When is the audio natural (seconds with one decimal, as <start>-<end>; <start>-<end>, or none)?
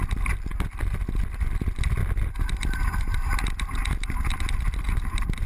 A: 0.0-2.0